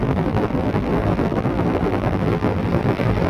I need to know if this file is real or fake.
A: fake